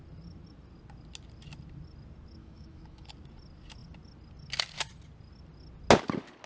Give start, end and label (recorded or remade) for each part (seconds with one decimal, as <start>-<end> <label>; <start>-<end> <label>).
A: 0.0-2.4 recorded; 2.4-3.1 remade; 3.1-6.5 recorded